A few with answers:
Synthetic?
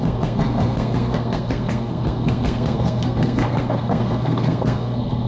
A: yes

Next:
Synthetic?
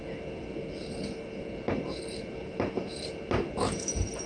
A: no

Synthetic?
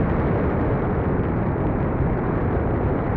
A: no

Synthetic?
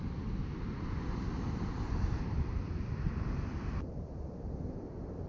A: no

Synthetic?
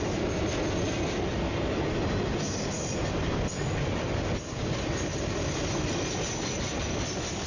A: no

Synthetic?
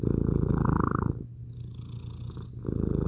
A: no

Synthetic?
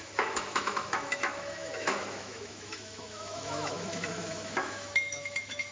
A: yes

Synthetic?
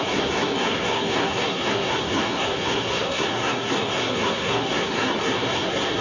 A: yes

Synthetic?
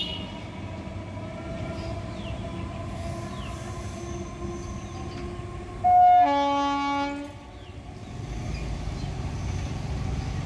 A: no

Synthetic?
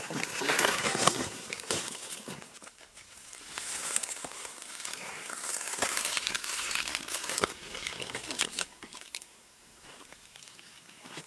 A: yes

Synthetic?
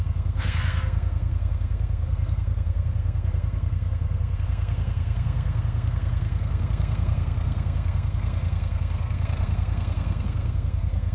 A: yes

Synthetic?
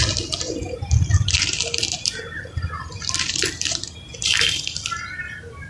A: no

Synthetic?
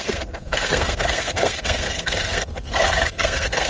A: yes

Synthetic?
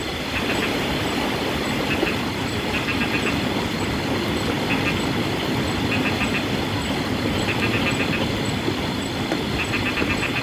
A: no